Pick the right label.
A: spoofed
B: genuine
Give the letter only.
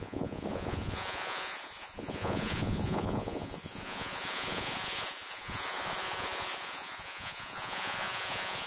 A